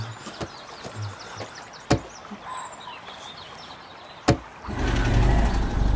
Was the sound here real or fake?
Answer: real